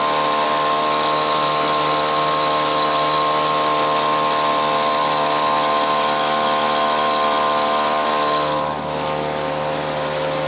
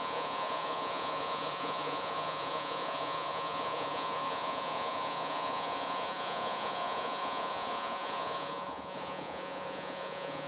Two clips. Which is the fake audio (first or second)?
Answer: second